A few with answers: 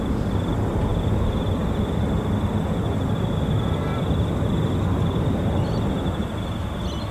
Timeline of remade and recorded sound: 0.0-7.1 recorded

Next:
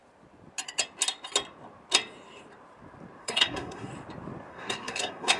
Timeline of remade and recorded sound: 0.0-3.2 recorded; 3.2-3.9 remade; 3.9-4.5 recorded; 4.5-5.4 remade

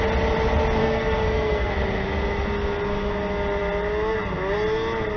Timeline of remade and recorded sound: 0.0-0.8 recorded; 0.8-1.7 remade; 1.7-5.2 recorded

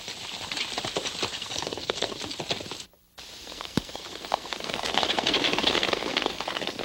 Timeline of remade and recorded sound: 0.0-1.3 recorded; 1.3-2.2 remade; 2.2-3.4 recorded; 3.4-6.8 remade

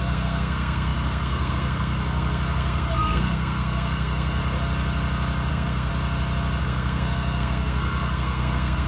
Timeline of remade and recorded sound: 0.0-4.4 remade; 4.4-5.5 recorded; 5.5-5.9 remade; 5.9-6.6 recorded; 6.6-8.9 remade